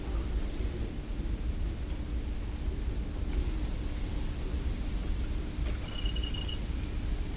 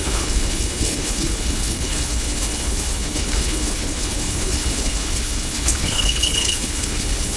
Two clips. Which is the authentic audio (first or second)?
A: first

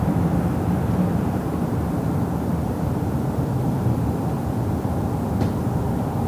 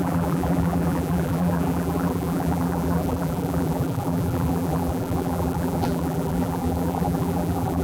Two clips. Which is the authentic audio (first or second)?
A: first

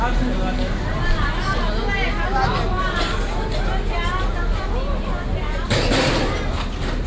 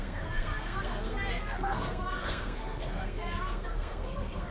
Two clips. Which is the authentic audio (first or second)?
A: first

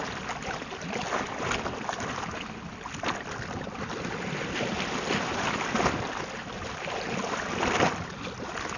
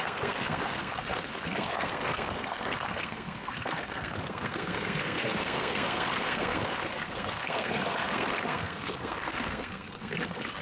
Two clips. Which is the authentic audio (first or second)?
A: first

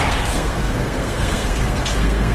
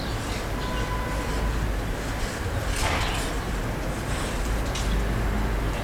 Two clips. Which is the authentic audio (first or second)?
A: second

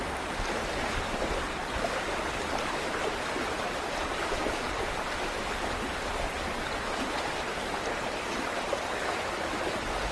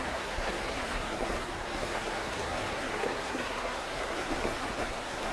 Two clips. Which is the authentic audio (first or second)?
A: first